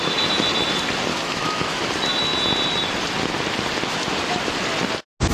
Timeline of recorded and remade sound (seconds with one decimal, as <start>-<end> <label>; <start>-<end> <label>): 0.0-1.1 recorded; 1.1-1.9 remade; 1.9-5.3 recorded